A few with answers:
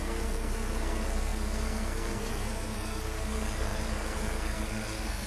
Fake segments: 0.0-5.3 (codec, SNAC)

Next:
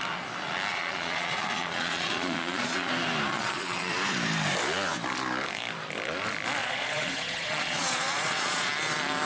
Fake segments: 0.7-2.9 (vocoder, Vocos); 3.3-3.9; 6.6-8.7

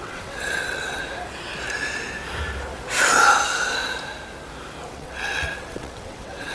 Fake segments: 0.0-1.0 (vocoder, WaveNeXt); 4.9-6.5

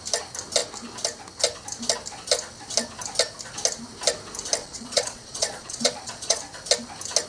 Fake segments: 4.6-6.4 (vocoder, Vocos)